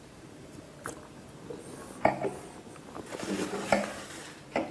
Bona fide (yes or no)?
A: yes